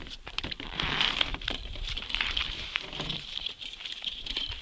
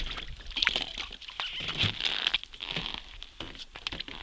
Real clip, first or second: second